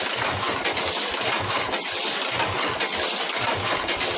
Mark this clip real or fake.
real